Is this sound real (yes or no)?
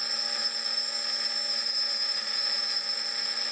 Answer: yes